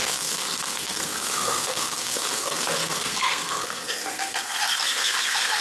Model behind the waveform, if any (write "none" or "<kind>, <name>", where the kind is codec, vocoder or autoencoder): codec, SNAC